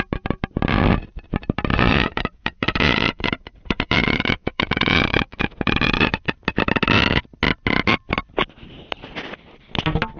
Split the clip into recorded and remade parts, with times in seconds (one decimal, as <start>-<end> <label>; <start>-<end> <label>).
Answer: 0.0-1.7 recorded; 1.7-6.3 remade; 6.3-10.2 recorded